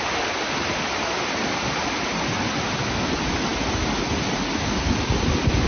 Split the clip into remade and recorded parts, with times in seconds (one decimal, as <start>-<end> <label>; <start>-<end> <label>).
0.0-5.7 recorded